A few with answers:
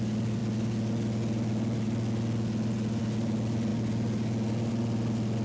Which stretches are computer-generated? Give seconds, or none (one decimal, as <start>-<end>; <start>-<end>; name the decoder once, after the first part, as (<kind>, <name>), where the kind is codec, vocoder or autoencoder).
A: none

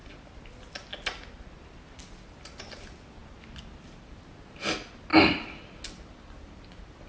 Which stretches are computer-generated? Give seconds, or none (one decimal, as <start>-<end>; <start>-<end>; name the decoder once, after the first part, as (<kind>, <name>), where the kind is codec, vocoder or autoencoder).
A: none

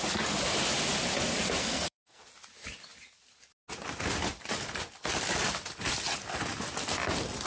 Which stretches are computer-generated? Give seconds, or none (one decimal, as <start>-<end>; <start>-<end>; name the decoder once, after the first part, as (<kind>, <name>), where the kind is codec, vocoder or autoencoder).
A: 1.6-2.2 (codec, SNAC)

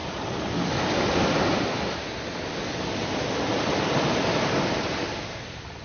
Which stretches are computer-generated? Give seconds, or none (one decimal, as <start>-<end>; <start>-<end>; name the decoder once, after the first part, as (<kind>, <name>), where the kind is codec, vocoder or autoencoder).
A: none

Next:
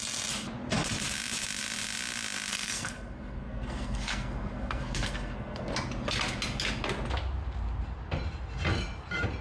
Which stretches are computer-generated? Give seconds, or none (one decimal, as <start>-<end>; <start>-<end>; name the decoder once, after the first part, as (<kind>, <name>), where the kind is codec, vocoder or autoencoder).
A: 2.5-5.7 (codec, SNAC)

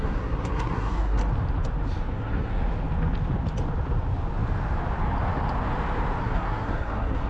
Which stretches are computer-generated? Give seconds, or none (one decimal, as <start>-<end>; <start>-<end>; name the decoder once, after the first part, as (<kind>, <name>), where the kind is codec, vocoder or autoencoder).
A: 0.0-1.2 (codec, SNAC); 2.1-2.6; 6.2-7.3

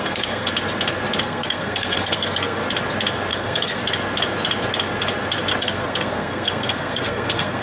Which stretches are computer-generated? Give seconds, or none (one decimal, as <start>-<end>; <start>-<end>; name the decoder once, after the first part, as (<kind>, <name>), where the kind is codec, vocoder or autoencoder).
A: 0.0-0.5 (codec, SNAC); 1.2-2.6; 3.3-3.8; 5.6-7.6